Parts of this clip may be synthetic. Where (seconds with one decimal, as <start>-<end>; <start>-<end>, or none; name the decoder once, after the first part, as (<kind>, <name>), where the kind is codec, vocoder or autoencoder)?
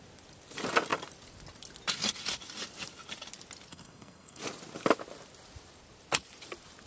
3.7-4.4 (codec, SNAC)